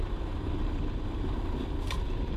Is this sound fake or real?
real